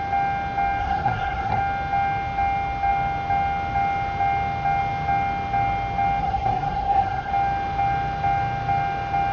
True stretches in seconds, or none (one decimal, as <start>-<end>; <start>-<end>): 0.0-0.8; 1.6-6.2; 7.3-9.3